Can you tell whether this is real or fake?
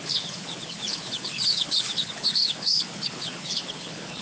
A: fake